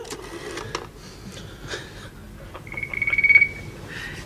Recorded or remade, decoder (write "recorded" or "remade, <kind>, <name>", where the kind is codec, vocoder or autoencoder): recorded